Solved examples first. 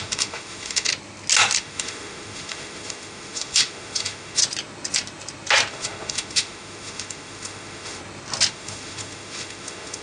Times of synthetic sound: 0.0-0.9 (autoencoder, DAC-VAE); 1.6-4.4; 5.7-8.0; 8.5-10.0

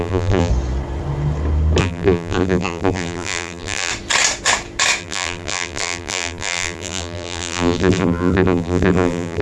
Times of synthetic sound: 0.0-0.5 (vocoder, BigVGAN v2); 1.8-3.9; 5.0-9.4